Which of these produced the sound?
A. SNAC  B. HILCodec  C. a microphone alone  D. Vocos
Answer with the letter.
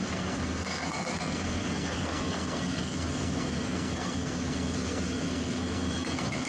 A